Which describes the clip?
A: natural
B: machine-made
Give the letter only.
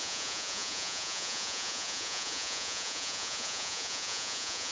B